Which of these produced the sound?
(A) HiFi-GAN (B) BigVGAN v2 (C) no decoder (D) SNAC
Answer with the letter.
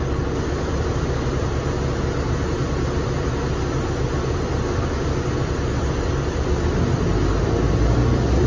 C